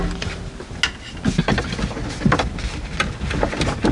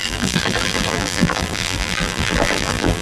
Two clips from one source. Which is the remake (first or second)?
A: second